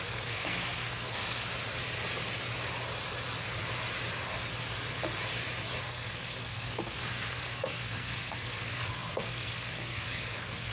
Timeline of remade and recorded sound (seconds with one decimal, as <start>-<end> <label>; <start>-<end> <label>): 0.0-1.5 remade; 1.5-5.8 recorded; 5.8-10.7 remade